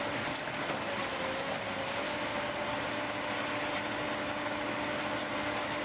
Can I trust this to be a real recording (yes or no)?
yes